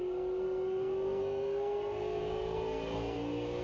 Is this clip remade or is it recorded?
remade